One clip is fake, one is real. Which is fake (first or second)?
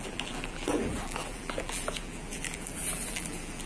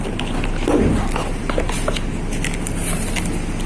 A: first